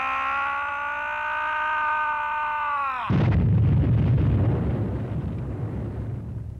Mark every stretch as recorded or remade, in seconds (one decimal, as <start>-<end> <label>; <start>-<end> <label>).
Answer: 0.0-0.7 remade; 0.7-4.7 recorded; 4.7-6.6 remade